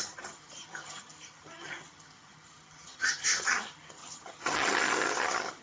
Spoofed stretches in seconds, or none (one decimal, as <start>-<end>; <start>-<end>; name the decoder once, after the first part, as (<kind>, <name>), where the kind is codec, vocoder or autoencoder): 0.0-5.6 (vocoder, HiFi-GAN)